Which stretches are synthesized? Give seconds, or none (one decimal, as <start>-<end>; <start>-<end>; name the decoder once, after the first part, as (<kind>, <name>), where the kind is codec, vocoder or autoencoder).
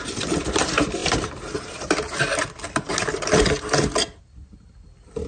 none